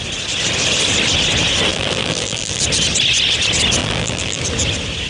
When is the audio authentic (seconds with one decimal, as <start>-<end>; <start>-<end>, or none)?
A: 0.0-1.7; 2.6-3.8; 4.4-5.1